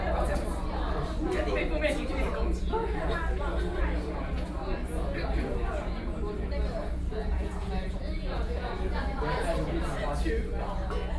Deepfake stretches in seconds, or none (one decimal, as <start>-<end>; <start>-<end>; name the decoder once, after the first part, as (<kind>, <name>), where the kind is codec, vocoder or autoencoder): 7.2-9.0 (vocoder, Vocos)